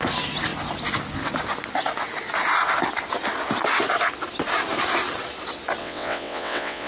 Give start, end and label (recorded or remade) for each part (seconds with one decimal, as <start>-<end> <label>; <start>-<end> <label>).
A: 0.0-5.8 recorded; 5.8-6.9 remade